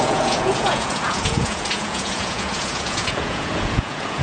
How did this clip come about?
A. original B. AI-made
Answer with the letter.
B